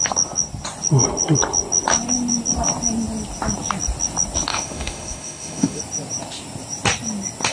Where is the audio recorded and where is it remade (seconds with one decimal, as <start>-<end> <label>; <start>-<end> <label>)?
0.0-4.5 recorded; 4.5-5.8 remade; 5.8-7.5 recorded